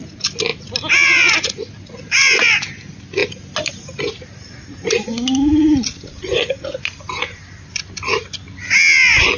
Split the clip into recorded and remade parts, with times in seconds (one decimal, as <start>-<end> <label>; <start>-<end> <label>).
0.0-9.4 recorded

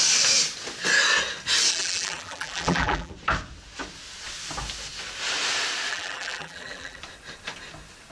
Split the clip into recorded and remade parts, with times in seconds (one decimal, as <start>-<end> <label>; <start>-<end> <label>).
0.0-1.7 recorded; 1.7-3.1 remade; 3.1-5.9 recorded; 5.9-7.0 remade; 7.0-8.1 recorded

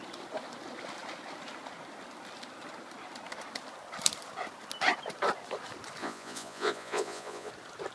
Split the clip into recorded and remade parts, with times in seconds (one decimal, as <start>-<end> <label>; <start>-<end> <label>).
0.0-6.0 recorded; 6.0-7.5 remade; 7.5-7.9 recorded

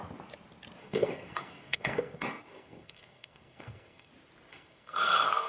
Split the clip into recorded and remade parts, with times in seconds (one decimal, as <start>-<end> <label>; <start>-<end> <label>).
0.0-0.8 recorded; 0.8-4.1 remade; 4.1-4.5 recorded; 4.5-5.5 remade

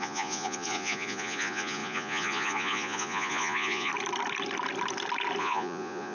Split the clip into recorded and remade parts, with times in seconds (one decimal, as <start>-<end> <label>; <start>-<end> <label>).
0.0-3.9 remade; 3.9-5.4 recorded; 5.4-6.1 remade

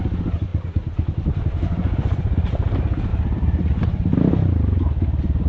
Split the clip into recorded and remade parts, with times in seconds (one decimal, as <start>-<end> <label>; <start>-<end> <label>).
0.0-3.1 recorded; 3.1-4.1 remade; 4.1-5.5 recorded

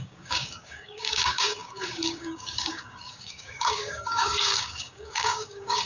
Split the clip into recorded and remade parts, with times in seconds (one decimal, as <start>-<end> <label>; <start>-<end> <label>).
0.0-5.9 remade

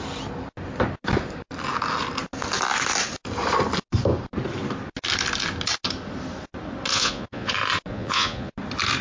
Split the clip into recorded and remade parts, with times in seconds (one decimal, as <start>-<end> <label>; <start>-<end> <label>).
0.0-6.9 recorded; 6.9-7.5 remade; 7.5-7.9 recorded; 7.9-8.5 remade; 8.5-9.0 recorded